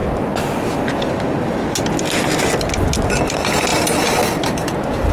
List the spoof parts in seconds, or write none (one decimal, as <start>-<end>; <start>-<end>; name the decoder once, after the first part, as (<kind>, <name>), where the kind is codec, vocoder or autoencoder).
3.1-3.7 (vocoder, BigVGAN v2); 4.4-5.1